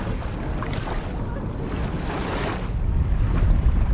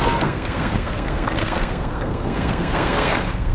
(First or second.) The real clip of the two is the first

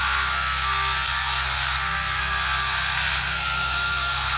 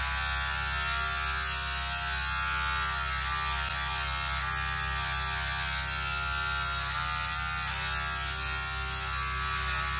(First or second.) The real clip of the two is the second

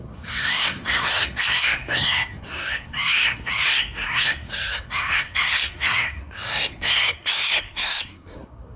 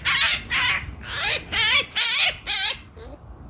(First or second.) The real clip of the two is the second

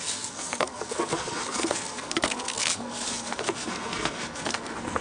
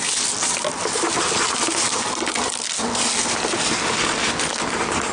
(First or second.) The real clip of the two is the second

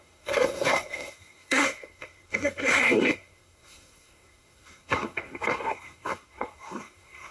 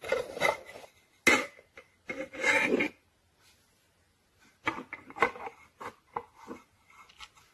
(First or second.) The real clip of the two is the second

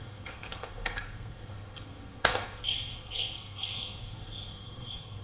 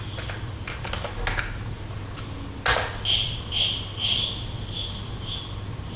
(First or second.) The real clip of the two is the second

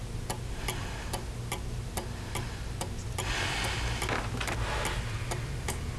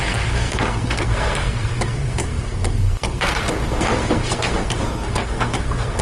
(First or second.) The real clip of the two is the first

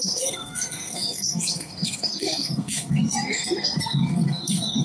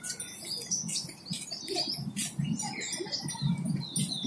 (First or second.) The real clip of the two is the second